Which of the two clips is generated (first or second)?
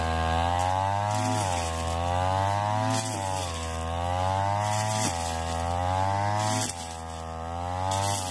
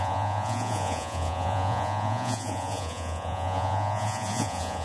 second